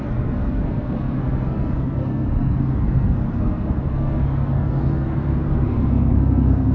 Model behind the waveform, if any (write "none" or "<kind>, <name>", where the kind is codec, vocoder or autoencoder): codec, SNAC